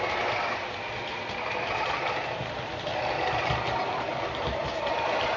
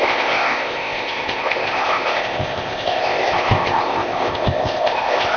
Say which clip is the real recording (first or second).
first